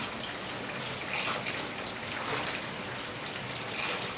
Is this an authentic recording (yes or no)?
yes